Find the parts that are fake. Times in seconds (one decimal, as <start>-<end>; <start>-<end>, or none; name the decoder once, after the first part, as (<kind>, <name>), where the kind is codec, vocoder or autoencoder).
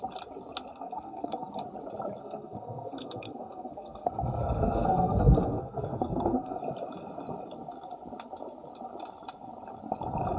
0.7-1.5 (codec, SNAC); 2.2-6.6